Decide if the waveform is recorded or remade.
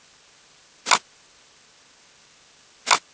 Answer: recorded